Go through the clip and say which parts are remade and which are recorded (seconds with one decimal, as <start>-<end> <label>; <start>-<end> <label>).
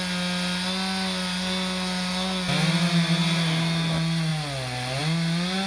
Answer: 0.0-5.7 recorded